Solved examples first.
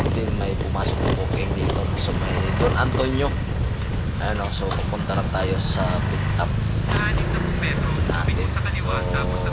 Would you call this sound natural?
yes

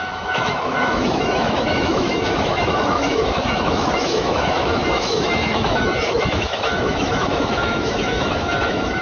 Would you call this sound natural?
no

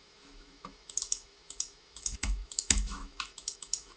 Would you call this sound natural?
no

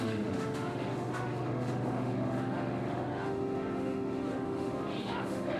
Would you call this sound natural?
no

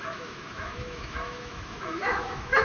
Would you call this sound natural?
no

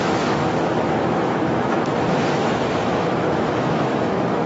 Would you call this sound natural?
no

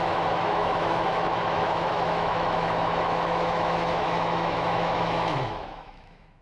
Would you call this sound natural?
no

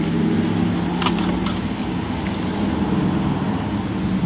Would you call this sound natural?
yes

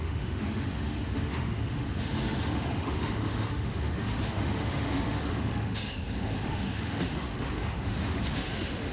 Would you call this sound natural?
no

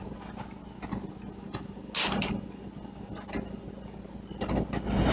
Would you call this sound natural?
yes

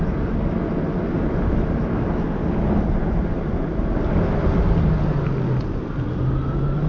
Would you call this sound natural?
yes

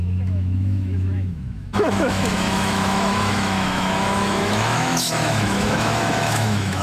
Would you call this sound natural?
no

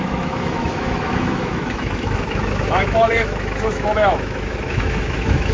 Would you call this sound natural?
no